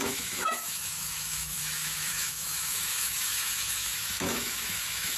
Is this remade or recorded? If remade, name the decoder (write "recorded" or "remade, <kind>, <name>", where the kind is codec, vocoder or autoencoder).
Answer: remade, autoencoder, DAC-VAE